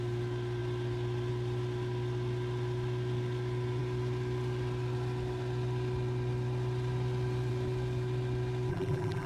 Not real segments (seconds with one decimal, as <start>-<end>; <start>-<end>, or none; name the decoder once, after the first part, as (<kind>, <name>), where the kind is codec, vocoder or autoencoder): 8.7-9.3 (vocoder, BigVGAN v2)